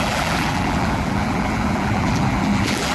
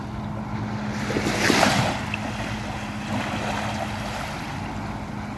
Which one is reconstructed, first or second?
first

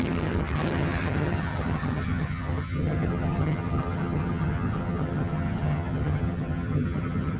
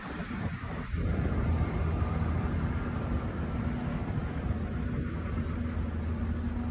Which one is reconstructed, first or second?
first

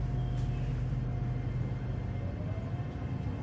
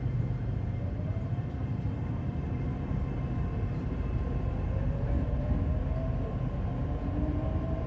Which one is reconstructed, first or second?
second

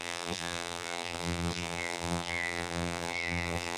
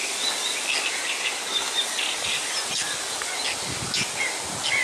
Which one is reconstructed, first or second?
first